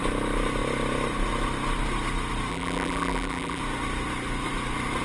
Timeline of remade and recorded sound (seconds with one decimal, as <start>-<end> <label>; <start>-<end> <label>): 0.0-2.5 recorded; 2.5-3.6 remade; 3.6-5.0 recorded